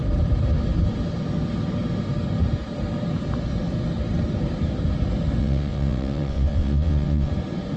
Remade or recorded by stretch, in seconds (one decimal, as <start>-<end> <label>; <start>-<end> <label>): 0.0-5.4 recorded; 5.4-7.3 remade; 7.3-7.8 recorded